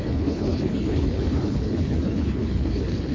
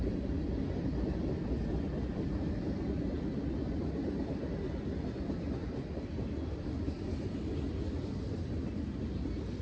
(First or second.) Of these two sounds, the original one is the second